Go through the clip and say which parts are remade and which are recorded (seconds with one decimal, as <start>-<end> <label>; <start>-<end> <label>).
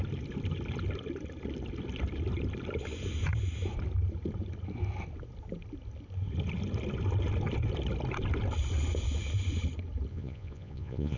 0.0-10.1 recorded; 10.1-11.2 remade